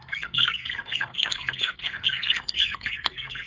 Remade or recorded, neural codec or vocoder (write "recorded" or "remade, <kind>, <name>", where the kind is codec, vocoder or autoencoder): remade, codec, SNAC